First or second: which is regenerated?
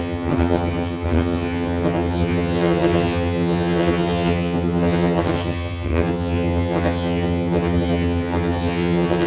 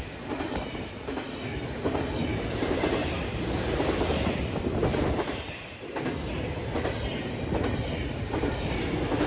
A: first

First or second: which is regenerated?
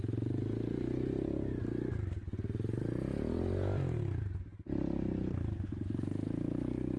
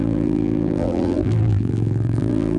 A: second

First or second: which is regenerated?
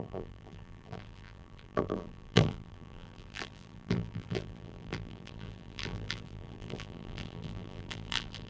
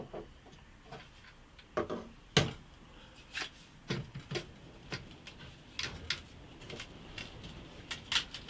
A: first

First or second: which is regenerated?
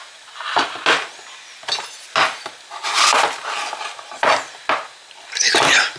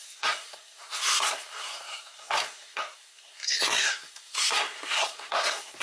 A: second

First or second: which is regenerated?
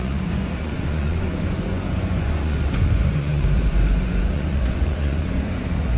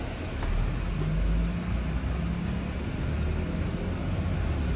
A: first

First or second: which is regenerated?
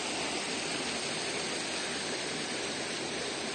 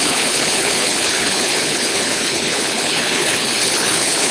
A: second